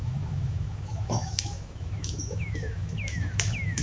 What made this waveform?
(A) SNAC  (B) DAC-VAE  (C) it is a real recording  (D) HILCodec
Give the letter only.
B